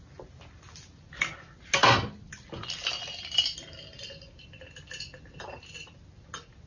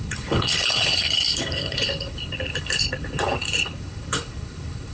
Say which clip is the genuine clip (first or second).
first